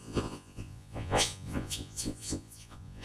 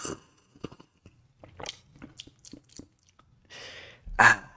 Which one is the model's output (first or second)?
first